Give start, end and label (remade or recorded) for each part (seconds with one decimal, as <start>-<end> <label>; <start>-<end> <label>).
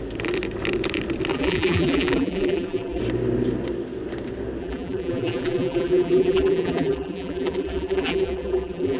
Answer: 0.0-1.3 recorded; 1.3-3.0 remade; 3.0-4.6 recorded; 4.6-9.0 remade